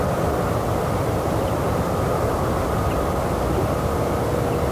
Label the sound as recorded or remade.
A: recorded